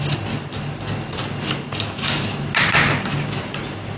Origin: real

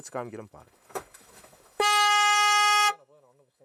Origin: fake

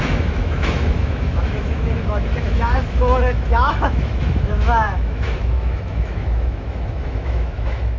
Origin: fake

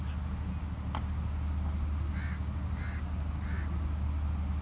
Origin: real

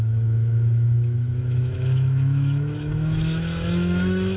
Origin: fake